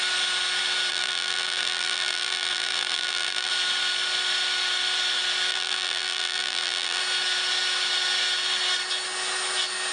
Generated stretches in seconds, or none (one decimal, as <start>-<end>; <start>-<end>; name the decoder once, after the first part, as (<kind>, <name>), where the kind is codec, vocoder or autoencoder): 0.9-3.5 (vocoder, BigVGAN v2); 5.5-7.0